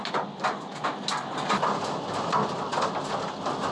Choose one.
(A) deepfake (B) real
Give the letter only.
B